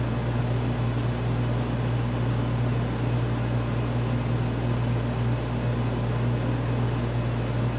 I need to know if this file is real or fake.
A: real